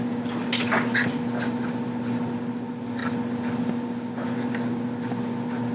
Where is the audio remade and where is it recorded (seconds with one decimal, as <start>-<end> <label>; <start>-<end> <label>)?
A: 0.0-5.7 recorded

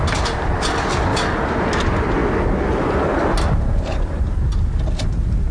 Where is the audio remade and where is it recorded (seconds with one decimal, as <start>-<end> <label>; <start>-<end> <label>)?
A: 0.0-1.1 recorded; 1.1-1.7 remade; 1.7-5.5 recorded

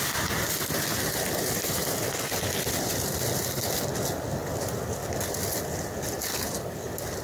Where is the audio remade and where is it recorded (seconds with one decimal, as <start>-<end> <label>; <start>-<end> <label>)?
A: 0.0-7.2 recorded

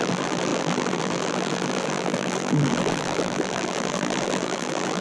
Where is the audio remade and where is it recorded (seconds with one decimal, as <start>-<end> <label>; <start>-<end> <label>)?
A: 0.0-5.0 remade

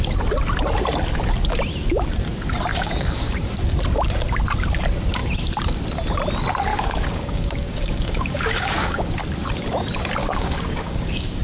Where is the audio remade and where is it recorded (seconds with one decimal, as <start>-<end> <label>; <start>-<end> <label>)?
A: 0.0-2.7 recorded; 2.7-3.5 remade; 3.5-6.7 recorded; 6.7-9.1 remade; 9.1-10.2 recorded; 10.2-11.4 remade